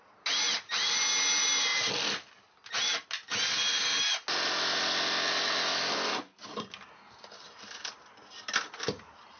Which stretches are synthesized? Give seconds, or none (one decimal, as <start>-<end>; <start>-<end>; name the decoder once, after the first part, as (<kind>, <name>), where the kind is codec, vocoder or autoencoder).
none